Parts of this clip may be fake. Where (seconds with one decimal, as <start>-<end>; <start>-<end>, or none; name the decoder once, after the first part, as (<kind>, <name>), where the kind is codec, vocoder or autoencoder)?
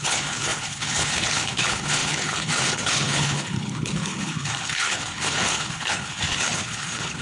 0.0-7.2 (codec, HILCodec)